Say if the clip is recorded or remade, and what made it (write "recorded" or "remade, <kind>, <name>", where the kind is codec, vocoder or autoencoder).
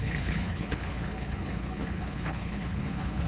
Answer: remade, codec, HILCodec